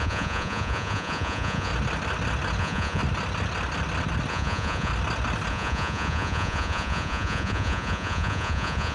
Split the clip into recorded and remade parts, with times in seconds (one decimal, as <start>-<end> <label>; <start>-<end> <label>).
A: 0.0-1.7 remade; 1.7-2.6 recorded; 2.6-3.0 remade; 3.0-4.3 recorded; 4.3-4.9 remade; 4.9-5.5 recorded; 5.5-8.9 remade